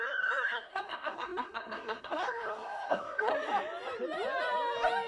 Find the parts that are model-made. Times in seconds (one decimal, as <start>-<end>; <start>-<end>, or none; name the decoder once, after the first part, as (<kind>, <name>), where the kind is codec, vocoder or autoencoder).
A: 0.0-3.3 (codec, SNAC)